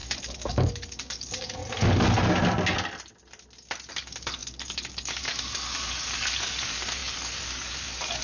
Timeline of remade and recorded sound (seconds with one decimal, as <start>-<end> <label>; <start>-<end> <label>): 0.0-1.6 remade; 1.6-3.9 recorded; 3.9-8.2 remade